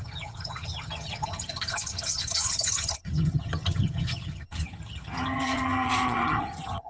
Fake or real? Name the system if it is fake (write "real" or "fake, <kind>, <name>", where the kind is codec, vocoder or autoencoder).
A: fake, vocoder, HiFi-GAN